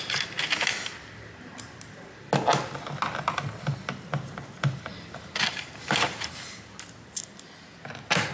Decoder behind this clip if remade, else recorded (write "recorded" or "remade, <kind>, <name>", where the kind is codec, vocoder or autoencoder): recorded